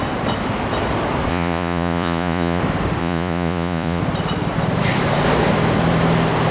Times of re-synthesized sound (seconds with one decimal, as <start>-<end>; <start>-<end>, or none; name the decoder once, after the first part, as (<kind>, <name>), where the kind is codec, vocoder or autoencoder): 1.3-2.6 (vocoder, Vocos); 3.0-4.0